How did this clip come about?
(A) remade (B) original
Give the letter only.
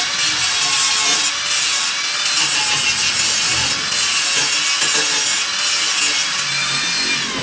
B